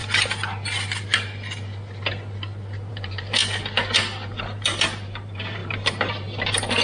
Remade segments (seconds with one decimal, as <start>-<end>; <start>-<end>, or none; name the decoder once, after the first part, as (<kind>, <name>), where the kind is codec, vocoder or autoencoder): 2.9-3.4 (vocoder, BigVGAN v2); 4.4-6.8